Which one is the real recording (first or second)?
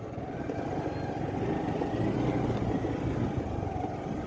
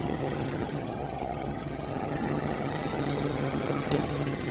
first